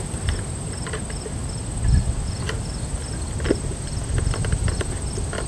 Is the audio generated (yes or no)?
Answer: no